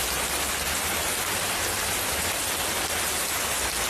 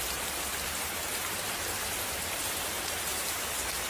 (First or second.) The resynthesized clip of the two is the second